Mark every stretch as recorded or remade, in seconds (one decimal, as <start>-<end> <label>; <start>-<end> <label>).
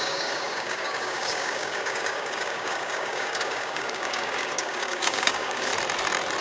0.0-5.7 remade; 5.7-6.4 recorded